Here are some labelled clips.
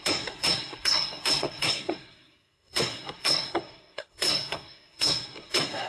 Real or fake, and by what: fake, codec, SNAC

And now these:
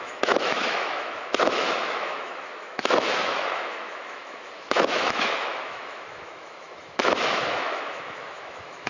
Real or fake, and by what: fake, autoencoder, DAC-VAE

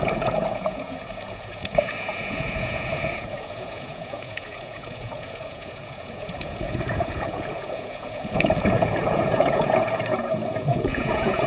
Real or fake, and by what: fake, vocoder, Vocos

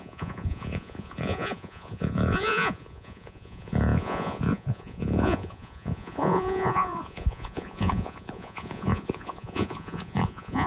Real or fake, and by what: fake, vocoder, Vocos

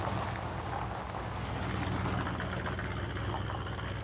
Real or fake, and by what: real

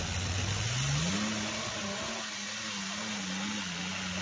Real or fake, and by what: real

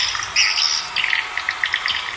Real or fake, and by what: real